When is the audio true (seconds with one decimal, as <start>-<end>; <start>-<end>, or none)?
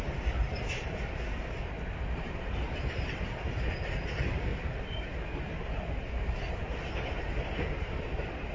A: 0.0-8.5